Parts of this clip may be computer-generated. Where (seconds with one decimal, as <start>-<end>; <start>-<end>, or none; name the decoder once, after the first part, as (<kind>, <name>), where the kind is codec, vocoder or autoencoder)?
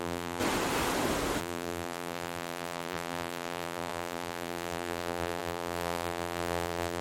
0.0-0.4 (vocoder, BigVGAN v2); 1.4-7.0